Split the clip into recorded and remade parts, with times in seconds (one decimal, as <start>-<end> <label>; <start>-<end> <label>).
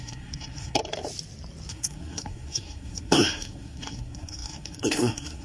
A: 0.0-0.8 remade; 0.8-1.7 recorded; 1.7-5.4 remade